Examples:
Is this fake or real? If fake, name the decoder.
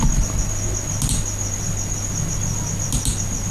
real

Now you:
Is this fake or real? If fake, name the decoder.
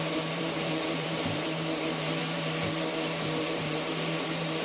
fake, vocoder, BigVGAN v2